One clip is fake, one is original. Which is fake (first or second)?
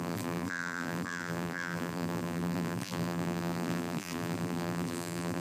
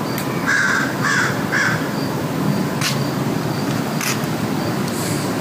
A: first